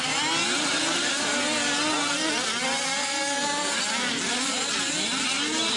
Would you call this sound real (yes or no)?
yes